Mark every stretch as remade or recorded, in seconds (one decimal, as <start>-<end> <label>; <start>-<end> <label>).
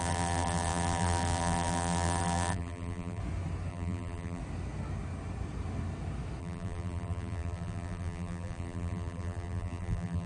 0.0-3.2 remade; 3.2-3.7 recorded; 3.7-4.4 remade; 4.4-6.4 recorded; 6.4-10.3 remade